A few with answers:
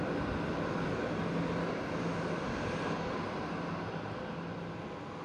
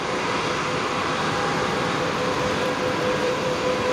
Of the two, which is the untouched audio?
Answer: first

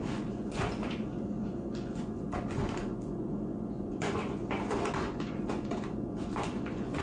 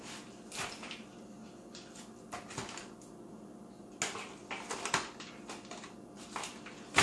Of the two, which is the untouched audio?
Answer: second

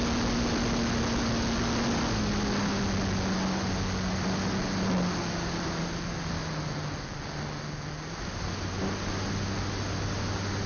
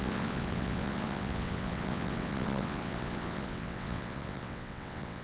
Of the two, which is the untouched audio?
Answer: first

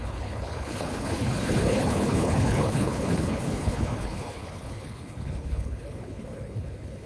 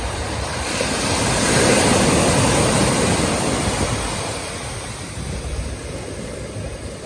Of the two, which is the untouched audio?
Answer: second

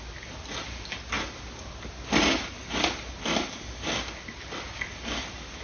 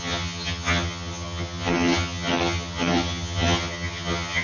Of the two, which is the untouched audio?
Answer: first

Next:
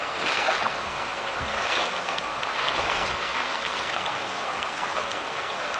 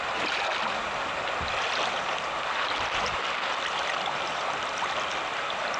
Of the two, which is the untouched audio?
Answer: second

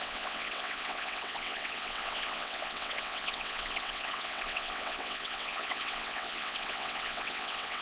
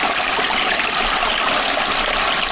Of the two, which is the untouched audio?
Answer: second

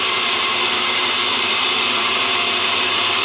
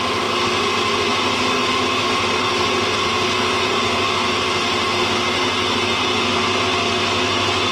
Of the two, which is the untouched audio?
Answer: second